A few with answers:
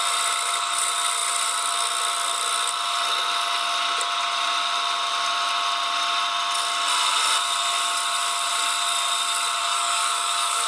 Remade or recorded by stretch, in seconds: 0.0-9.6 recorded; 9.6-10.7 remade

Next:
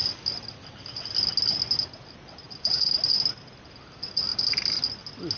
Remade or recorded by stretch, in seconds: 0.0-5.4 recorded